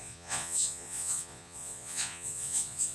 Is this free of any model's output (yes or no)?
no